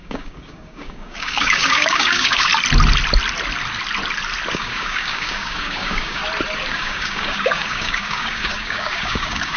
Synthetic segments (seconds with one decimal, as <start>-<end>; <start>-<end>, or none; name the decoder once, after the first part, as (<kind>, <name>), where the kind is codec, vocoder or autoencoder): 0.0-2.5 (codec, DAC); 4.5-6.2; 6.7-9.6